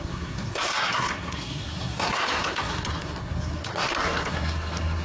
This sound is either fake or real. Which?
fake